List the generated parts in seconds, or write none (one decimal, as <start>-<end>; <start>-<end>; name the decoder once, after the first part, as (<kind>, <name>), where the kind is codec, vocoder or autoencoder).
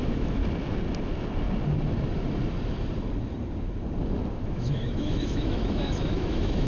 0.0-0.4 (autoencoder, DAC-VAE); 4.4-6.7